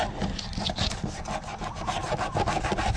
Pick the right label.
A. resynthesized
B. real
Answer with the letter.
B